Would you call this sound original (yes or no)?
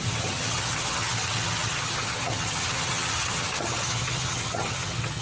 no